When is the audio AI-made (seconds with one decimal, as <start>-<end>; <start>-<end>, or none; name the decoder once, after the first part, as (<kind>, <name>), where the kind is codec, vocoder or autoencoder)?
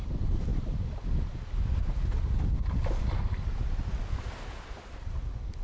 none